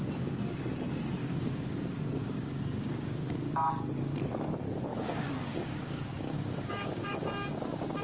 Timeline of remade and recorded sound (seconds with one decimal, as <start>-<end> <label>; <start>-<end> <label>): 0.0-1.2 recorded; 1.2-4.2 remade; 4.2-4.9 recorded; 4.9-7.2 remade; 7.2-8.0 recorded